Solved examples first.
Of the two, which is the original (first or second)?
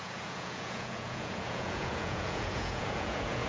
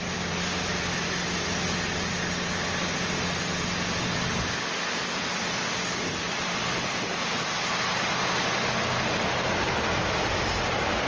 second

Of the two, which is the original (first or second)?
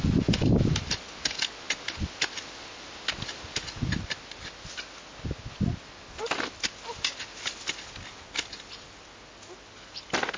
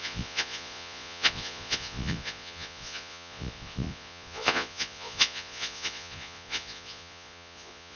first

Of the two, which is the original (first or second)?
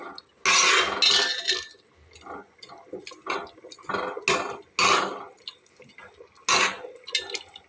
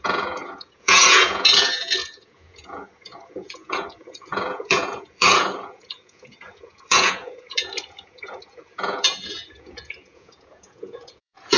first